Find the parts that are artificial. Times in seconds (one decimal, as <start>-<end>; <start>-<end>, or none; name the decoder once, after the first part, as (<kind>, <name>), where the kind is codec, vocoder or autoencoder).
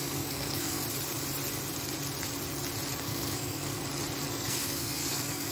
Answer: 0.0-0.8 (codec, SNAC); 3.0-3.8; 4.3-5.5